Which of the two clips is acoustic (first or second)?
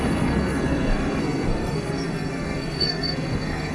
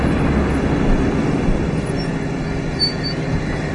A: second